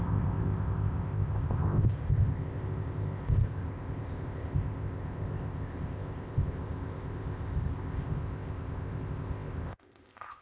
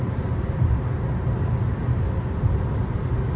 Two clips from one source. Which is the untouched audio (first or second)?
second